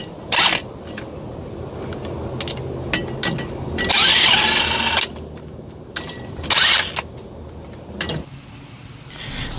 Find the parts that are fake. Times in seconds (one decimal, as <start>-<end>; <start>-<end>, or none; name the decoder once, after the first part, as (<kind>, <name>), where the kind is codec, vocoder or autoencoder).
none